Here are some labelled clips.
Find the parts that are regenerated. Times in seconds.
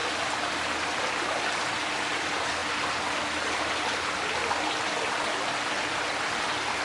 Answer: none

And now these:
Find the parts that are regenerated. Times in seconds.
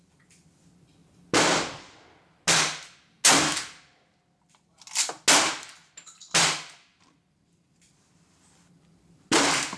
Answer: none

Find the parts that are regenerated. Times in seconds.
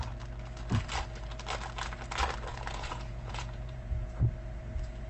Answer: 2.5-4.1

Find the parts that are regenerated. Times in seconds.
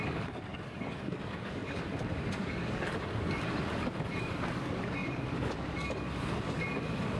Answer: 0.0-7.2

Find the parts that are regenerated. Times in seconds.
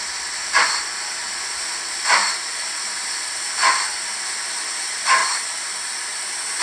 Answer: none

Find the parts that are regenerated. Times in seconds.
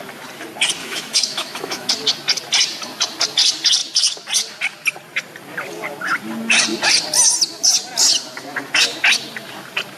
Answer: 0.8-1.9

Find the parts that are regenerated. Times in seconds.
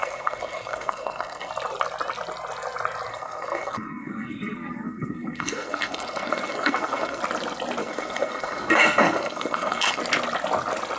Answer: 0.0-1.5; 3.1-7.2; 7.8-10.0